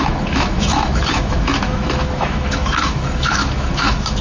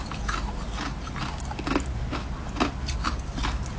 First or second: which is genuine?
second